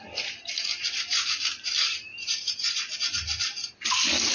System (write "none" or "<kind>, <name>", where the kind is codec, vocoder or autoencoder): none